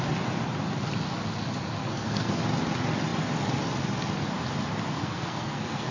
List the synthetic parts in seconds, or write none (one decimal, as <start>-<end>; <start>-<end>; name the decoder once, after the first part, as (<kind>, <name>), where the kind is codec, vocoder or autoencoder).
1.8-2.4 (codec, SNAC); 5.0-5.9